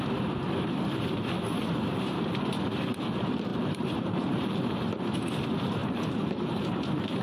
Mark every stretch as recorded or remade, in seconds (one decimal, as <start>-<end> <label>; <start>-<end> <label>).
0.0-3.5 recorded; 3.5-5.0 remade; 5.0-5.8 recorded; 5.8-7.2 remade